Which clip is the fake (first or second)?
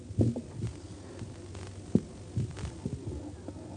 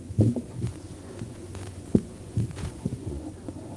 second